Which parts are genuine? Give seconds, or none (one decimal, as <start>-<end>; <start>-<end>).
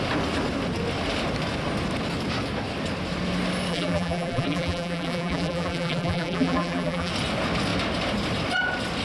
0.0-3.7; 7.1-9.0